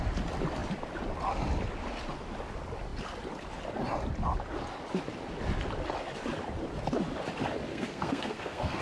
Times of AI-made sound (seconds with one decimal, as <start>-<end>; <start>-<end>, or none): 7.7-8.8